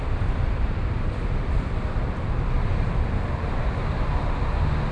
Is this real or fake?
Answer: fake